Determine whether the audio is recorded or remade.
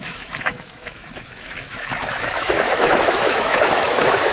remade